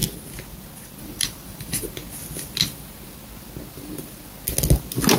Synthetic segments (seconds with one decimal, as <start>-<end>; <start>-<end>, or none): 1.0-2.0